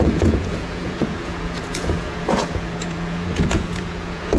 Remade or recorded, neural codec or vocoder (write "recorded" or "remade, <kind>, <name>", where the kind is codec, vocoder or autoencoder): remade, vocoder, Vocos